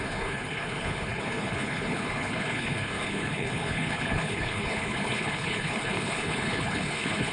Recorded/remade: remade